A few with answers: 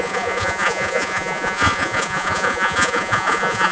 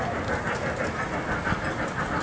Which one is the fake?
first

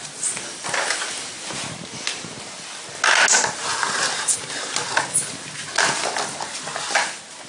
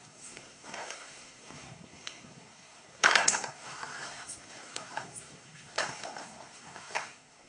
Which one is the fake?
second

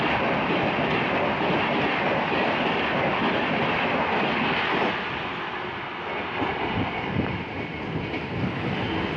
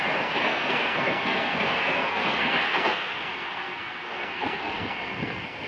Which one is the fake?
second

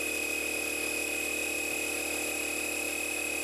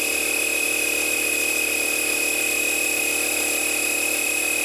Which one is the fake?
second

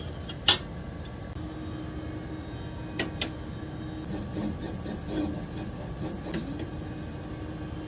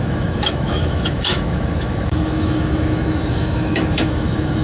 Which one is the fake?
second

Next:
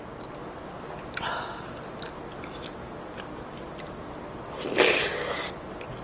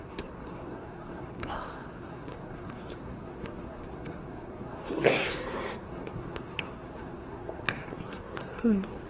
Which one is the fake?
second